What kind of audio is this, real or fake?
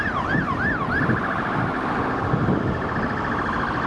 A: real